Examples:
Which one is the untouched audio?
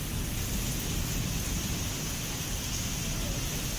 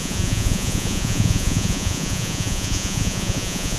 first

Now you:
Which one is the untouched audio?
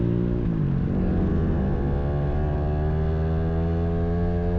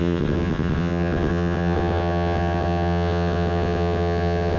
first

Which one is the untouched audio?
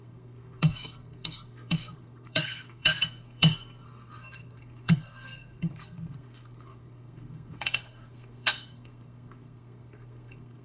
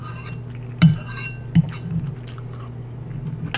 second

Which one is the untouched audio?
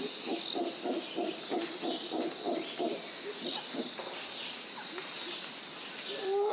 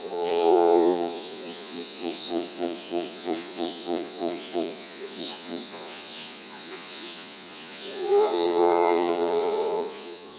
first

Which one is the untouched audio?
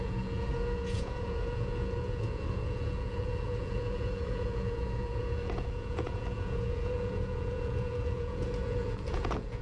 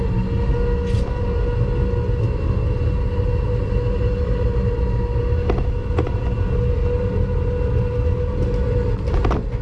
second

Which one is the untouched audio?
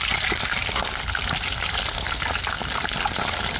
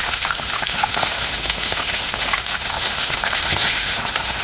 first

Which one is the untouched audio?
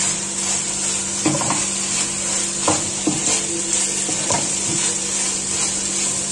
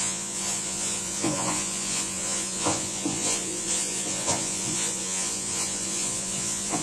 first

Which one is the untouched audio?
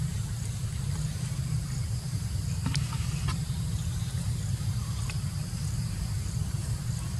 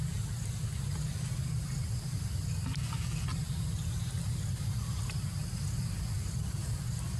second